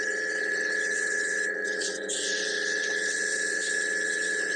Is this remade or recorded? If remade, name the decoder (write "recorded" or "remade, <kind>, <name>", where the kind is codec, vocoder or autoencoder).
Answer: remade, vocoder, WaveNeXt